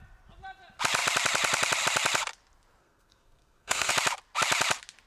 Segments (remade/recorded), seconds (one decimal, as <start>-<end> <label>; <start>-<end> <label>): 0.0-2.8 recorded; 2.8-3.9 remade; 3.9-5.1 recorded